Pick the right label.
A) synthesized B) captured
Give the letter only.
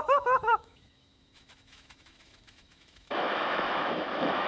A